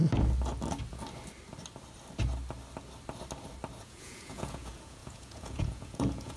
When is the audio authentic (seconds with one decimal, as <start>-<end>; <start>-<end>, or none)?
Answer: 0.0-3.8